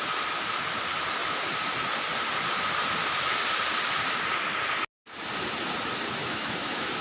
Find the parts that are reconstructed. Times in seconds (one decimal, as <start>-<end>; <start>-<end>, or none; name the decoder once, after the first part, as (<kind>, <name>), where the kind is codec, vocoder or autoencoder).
6.2-7.0 (autoencoder, DAC-VAE)